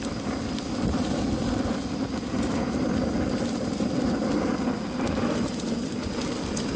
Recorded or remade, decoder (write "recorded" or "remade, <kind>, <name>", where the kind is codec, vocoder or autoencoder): recorded